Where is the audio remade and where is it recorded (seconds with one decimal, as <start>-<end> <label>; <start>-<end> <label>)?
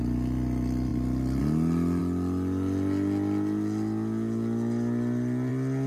0.0-5.9 recorded